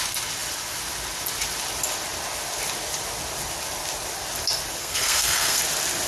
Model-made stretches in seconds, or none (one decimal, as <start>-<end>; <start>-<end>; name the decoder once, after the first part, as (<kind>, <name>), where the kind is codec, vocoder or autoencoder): 4.8-5.6 (codec, SNAC)